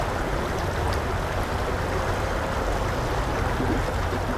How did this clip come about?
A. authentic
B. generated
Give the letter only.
A